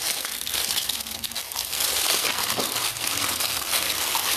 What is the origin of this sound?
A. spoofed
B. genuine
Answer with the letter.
A